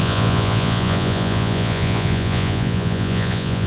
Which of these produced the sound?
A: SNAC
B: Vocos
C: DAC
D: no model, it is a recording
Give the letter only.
B